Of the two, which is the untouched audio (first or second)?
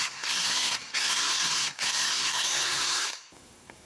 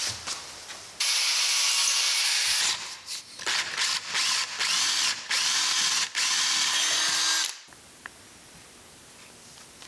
second